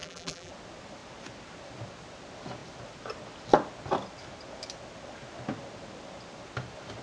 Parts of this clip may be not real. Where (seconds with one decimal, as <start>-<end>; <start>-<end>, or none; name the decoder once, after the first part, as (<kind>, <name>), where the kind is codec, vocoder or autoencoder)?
0.0-0.5 (vocoder, BigVGAN v2)